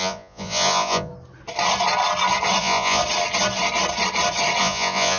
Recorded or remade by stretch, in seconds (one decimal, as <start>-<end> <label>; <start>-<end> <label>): 0.0-1.1 remade; 1.1-2.6 recorded; 2.6-3.0 remade; 3.0-4.6 recorded; 4.6-5.2 remade

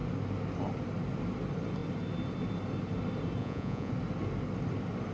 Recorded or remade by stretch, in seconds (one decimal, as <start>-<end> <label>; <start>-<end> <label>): 0.0-3.4 recorded; 3.4-3.9 remade; 3.9-5.1 recorded

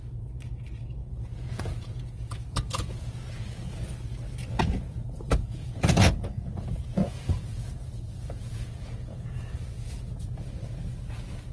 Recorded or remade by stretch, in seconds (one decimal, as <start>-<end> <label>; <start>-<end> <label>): 0.0-1.0 recorded; 1.0-3.7 remade; 3.7-4.4 recorded; 4.4-9.4 remade; 9.4-11.5 recorded

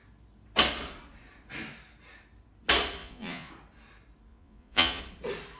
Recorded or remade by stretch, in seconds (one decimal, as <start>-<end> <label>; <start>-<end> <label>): 0.0-3.0 recorded; 3.0-3.5 remade; 3.5-4.3 recorded; 4.3-5.0 remade; 5.0-5.6 recorded